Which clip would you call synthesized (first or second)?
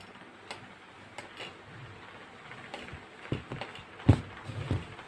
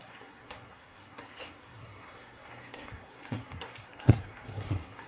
second